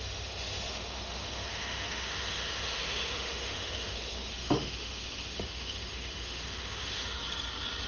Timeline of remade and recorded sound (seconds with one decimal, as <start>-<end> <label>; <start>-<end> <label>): 0.0-7.2 remade; 7.2-7.9 recorded